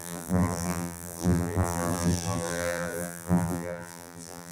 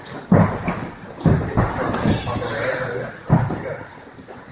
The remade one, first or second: first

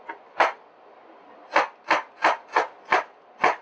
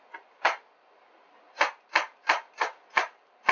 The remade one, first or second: second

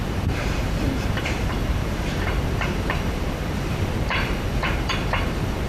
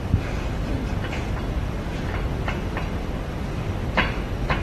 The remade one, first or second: first